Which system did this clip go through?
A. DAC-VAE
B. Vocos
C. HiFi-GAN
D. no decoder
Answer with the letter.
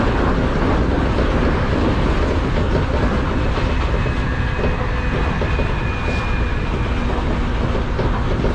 D